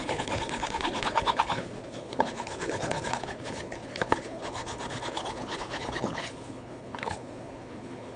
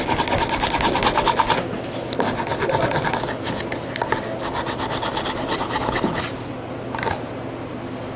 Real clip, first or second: second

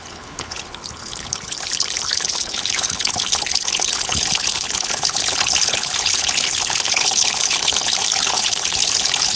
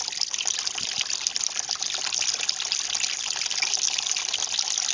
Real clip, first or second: second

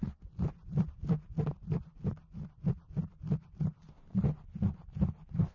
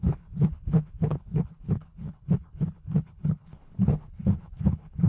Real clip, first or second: first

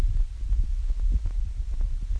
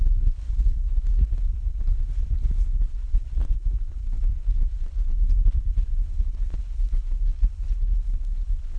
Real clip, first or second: first